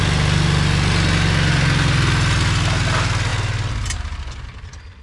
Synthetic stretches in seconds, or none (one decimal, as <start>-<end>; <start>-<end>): none